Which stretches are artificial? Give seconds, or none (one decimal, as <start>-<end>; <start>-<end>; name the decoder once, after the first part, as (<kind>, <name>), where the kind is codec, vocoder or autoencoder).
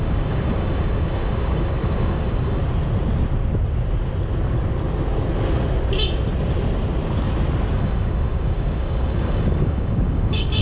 0.0-2.6 (codec, DAC); 7.8-10.6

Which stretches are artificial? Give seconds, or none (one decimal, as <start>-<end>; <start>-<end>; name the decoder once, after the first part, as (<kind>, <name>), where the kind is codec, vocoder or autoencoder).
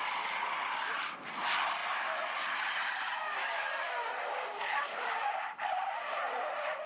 none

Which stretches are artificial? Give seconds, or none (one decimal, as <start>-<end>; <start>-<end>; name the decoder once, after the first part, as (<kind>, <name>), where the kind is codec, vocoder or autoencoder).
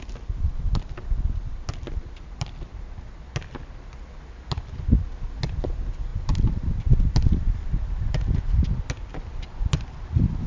none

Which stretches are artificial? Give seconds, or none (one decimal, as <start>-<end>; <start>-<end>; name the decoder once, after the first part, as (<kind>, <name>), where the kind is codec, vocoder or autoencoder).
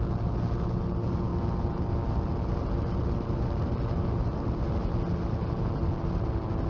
none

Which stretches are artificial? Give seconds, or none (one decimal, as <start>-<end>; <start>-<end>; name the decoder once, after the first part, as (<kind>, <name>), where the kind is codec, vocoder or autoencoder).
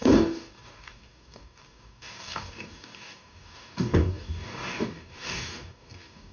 0.0-6.3 (codec, DAC)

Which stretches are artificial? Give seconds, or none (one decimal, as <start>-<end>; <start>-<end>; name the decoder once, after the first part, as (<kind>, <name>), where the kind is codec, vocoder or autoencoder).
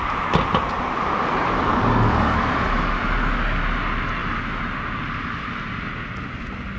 1.7-2.4 (codec, DAC)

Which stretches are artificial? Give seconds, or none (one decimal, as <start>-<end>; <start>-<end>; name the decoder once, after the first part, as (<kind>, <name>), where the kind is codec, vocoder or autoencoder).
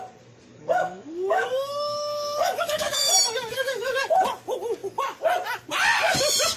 0.5-3.1 (codec, DAC); 3.5-4.1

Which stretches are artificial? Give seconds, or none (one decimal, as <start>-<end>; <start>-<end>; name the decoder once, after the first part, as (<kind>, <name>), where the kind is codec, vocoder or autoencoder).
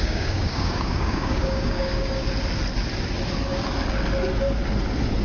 0.0-2.2 (codec, DAC)